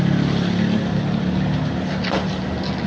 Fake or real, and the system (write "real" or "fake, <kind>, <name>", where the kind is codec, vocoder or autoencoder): real